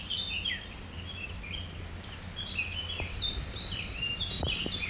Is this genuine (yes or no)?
yes